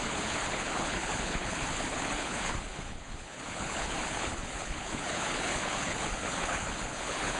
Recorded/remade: remade